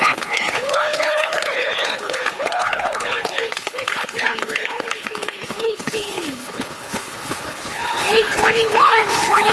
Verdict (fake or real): fake